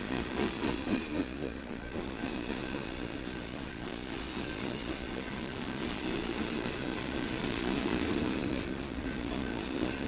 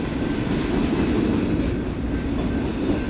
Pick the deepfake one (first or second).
first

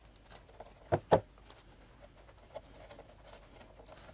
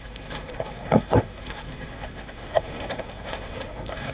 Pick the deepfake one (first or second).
second